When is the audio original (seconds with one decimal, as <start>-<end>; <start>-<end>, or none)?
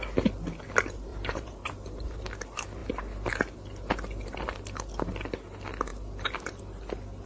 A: 0.0-1.1; 2.3-7.3